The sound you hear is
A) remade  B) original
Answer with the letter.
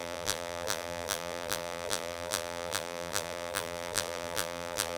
A